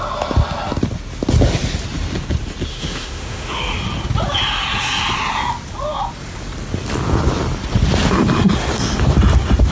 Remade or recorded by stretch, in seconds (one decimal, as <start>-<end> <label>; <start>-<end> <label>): 0.0-2.7 recorded; 2.7-3.6 remade; 3.6-9.7 recorded